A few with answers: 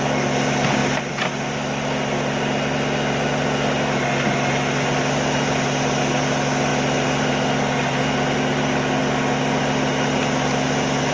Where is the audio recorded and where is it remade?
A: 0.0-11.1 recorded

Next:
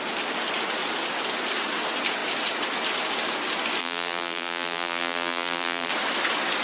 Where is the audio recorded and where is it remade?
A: 0.0-3.8 recorded; 3.8-5.9 remade; 5.9-6.6 recorded

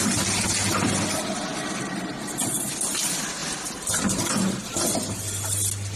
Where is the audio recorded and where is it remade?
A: 0.0-6.0 recorded

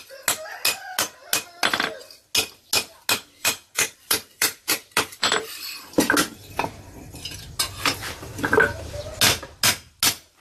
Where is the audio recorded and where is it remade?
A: 0.0-3.4 recorded; 3.4-5.7 remade; 5.7-10.4 recorded

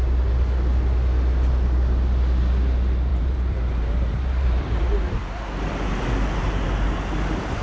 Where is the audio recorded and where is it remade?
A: 0.0-3.1 recorded; 3.1-5.9 remade; 5.9-7.6 recorded

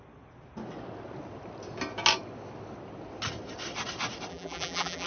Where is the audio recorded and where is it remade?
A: 0.0-4.3 recorded; 4.3-5.1 remade

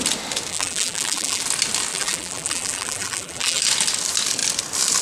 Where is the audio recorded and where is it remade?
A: 0.0-0.5 recorded; 0.5-1.4 remade; 1.4-1.9 recorded; 1.9-3.6 remade; 3.6-5.0 recorded